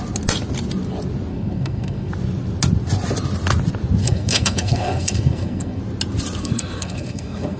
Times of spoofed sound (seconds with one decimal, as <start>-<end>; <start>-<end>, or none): 1.3-2.1; 4.0-5.8; 6.4-7.6